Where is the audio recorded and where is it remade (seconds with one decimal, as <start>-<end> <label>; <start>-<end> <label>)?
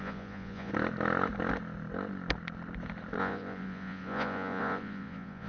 0.0-0.7 remade; 0.7-3.2 recorded; 3.2-5.5 remade